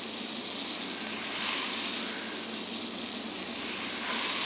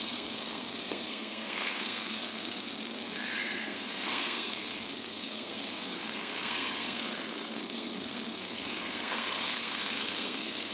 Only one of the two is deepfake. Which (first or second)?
second